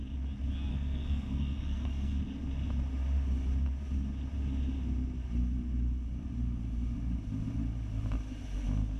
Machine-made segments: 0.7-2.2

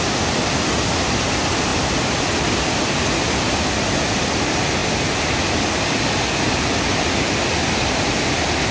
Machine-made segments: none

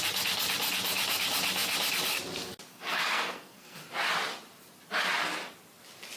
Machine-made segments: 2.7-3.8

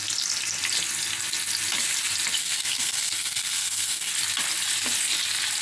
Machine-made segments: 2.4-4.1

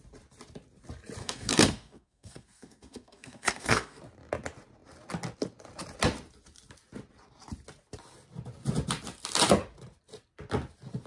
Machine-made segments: 1.2-4.0